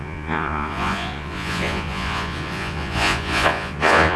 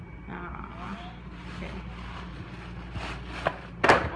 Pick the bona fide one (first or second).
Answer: second